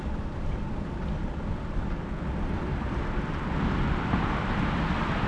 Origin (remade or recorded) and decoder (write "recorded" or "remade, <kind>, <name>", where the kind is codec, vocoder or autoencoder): recorded